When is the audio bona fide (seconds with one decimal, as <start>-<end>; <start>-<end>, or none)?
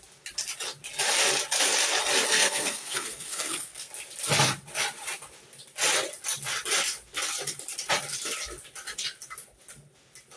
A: 0.0-2.3; 3.9-10.4